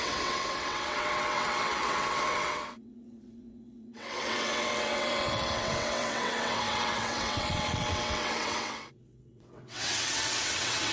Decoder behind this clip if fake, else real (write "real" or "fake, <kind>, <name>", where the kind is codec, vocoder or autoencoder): fake, vocoder, WaveNeXt